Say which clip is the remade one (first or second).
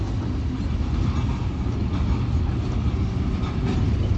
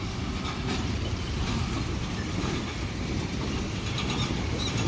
second